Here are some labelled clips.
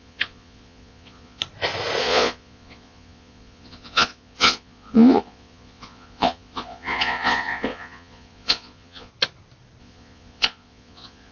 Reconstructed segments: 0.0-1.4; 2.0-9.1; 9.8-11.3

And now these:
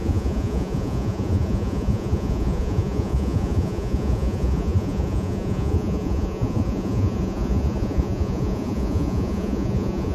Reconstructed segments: 0.0-10.1